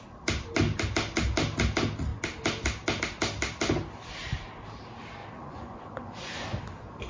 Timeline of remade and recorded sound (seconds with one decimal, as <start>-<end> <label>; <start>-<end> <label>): 0.0-5.2 recorded; 5.2-6.6 remade; 6.6-7.1 recorded